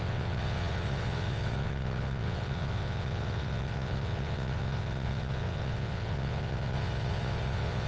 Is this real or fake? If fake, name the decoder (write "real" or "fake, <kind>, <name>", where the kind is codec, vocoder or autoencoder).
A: fake, vocoder, WaveNeXt